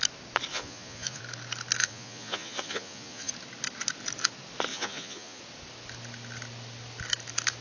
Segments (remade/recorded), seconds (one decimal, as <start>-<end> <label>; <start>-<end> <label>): 0.0-0.5 recorded; 0.5-1.2 remade; 1.2-1.8 recorded; 1.8-3.3 remade; 3.3-4.7 recorded; 4.7-5.4 remade; 5.4-7.6 recorded